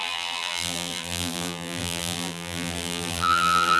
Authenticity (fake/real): fake